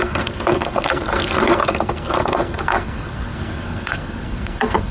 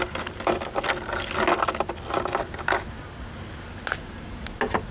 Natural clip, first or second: second